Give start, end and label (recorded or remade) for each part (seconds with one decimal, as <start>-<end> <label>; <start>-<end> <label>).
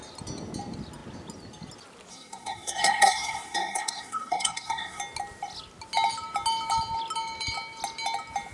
0.0-2.1 recorded; 2.1-5.0 remade; 5.0-8.5 recorded